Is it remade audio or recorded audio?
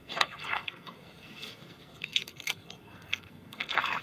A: remade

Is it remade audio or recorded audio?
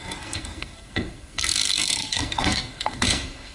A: remade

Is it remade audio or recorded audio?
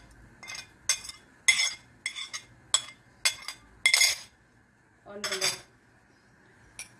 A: recorded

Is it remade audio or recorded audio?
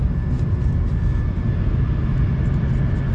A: recorded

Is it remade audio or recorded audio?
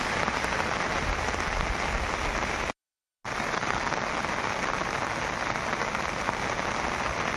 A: recorded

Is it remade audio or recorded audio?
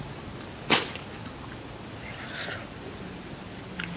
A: recorded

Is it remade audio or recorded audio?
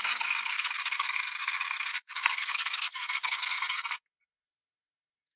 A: remade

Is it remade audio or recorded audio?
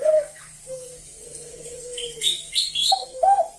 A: remade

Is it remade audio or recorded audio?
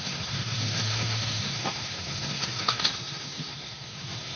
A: remade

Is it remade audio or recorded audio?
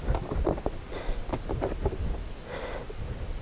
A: recorded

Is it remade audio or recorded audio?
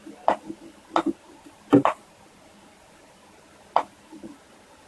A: recorded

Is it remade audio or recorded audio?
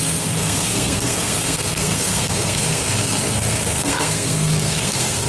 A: remade